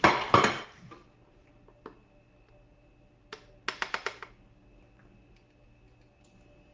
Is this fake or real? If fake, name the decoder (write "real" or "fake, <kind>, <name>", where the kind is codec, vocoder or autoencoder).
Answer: real